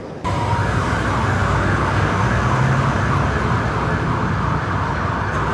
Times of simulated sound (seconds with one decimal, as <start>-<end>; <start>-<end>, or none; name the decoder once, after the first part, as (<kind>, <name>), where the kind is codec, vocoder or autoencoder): none